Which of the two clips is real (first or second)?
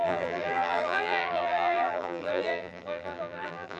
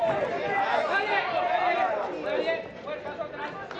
second